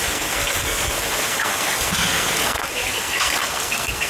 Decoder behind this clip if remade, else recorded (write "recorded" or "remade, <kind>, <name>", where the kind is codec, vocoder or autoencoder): remade, codec, SNAC